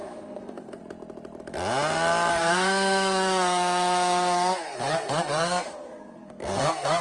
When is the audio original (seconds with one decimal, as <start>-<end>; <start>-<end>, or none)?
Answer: 0.8-2.3